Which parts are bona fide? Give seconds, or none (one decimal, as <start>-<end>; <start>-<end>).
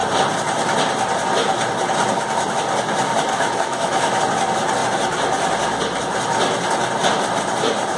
0.0-3.3; 4.2-8.0